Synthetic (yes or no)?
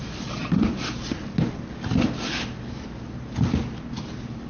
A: no